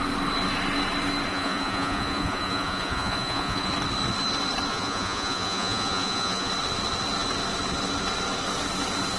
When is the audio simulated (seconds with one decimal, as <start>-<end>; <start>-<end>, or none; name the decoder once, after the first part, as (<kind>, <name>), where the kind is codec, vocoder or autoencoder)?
1.3-3.7 (vocoder, Vocos); 4.7-6.5